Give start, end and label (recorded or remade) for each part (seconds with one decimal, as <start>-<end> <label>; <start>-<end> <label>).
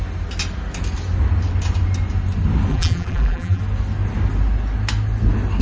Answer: 0.0-2.7 recorded; 2.7-3.6 remade; 3.6-5.6 recorded